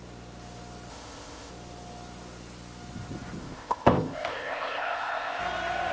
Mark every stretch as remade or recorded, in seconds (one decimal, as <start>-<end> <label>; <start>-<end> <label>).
0.0-0.9 recorded; 0.9-1.5 remade; 1.5-3.4 recorded; 3.4-5.4 remade; 5.4-5.9 recorded